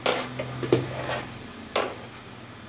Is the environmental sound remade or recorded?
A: recorded